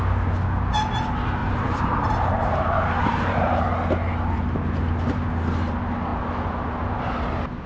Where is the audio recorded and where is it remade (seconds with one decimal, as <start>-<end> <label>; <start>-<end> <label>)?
0.0-1.4 recorded; 1.4-3.6 remade; 3.6-7.7 recorded